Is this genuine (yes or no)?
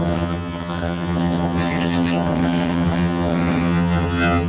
no